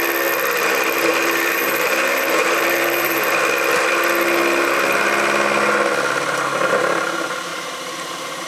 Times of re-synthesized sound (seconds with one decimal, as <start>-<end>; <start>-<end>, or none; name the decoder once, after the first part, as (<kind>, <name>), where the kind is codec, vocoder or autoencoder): 1.1-3.3 (vocoder, BigVGAN v2); 7.5-8.5